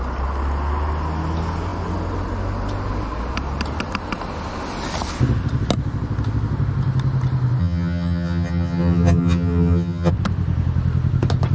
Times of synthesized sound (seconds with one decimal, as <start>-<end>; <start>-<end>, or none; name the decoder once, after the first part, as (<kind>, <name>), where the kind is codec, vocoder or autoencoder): 7.6-10.1 (vocoder, HiFi-GAN)